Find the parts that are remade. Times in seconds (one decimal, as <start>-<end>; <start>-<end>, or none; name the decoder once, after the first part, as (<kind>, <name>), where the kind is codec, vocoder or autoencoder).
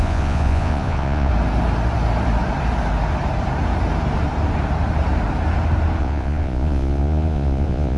0.0-1.3 (vocoder, Vocos); 6.0-8.0